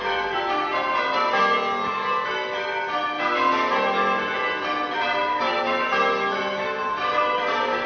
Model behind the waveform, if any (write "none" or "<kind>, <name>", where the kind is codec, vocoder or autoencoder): none